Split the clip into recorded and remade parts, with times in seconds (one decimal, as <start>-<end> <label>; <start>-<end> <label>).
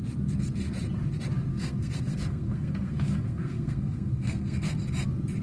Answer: 0.0-1.5 recorded; 1.5-4.7 remade; 4.7-5.4 recorded